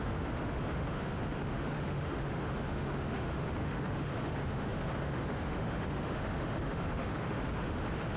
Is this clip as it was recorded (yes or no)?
no